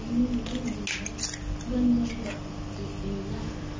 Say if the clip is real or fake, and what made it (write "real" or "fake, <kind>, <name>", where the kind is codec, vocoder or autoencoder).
real